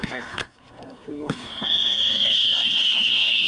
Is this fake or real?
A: fake